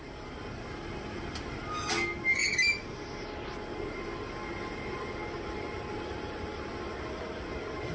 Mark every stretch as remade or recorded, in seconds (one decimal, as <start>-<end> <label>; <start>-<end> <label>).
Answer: 0.0-7.9 recorded